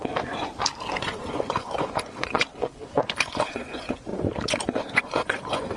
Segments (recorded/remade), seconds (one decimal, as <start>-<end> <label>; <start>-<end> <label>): 0.0-0.5 remade; 0.5-1.0 recorded; 1.0-5.8 remade